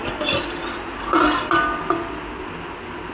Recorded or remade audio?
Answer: recorded